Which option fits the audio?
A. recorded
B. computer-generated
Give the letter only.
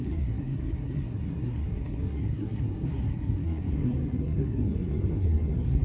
B